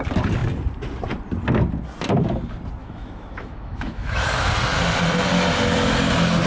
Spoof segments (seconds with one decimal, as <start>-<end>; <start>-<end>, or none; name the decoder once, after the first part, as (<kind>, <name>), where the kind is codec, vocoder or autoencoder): 2.8-4.5 (autoencoder, DAC-VAE)